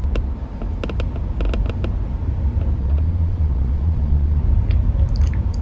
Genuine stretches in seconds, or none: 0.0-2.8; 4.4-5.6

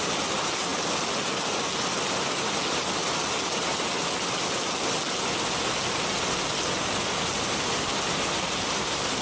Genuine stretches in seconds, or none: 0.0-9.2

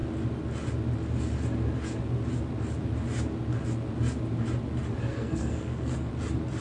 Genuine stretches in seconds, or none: 0.0-5.1; 6.1-6.6